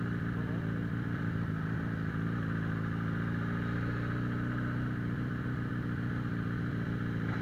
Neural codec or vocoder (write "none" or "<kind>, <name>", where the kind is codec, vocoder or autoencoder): none